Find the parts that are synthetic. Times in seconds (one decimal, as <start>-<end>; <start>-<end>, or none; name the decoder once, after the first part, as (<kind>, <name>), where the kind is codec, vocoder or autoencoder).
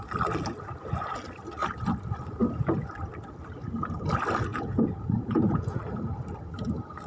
4.5-5.8 (vocoder, Vocos)